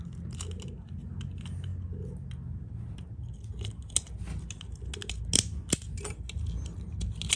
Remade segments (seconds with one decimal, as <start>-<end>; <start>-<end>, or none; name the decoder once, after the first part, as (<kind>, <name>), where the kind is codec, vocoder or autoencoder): none

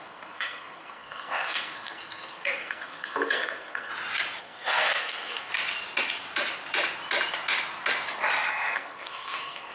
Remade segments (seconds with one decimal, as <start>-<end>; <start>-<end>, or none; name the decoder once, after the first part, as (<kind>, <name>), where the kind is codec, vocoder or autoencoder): 0.0-3.9 (codec, SNAC); 4.4-5.5; 8.5-9.7

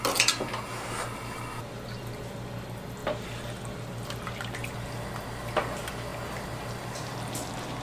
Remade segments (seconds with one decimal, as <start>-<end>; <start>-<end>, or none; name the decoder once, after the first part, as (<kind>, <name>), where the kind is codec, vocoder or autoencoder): none

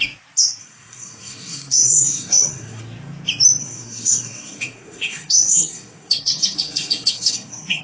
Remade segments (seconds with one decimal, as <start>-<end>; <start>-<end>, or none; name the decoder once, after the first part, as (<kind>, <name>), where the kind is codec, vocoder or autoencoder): 0.6-2.8 (codec, SNAC); 3.6-7.8

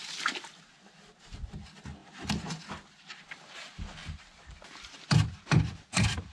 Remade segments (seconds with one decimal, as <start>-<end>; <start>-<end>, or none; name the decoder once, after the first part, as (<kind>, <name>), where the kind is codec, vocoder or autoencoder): none

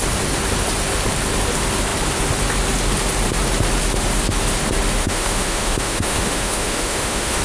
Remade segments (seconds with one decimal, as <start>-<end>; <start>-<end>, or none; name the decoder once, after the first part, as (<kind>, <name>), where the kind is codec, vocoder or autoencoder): 5.0-7.4 (autoencoder, DAC-VAE)

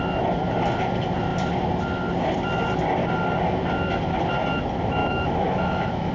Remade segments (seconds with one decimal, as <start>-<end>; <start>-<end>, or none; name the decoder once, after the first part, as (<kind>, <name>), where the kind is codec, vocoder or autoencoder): 5.0-6.1 (autoencoder, DAC-VAE)

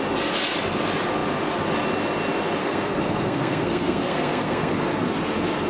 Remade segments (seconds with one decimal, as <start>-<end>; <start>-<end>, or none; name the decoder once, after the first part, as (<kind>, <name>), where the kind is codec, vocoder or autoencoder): 2.6-4.7 (codec, SNAC)